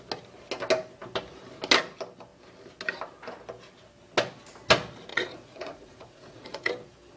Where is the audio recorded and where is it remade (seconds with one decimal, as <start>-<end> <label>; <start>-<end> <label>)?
0.0-5.1 recorded; 5.1-6.7 remade; 6.7-7.2 recorded